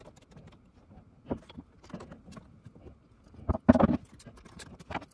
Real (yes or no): yes